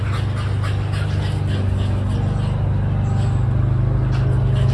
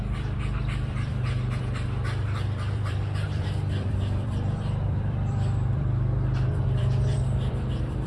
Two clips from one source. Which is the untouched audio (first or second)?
first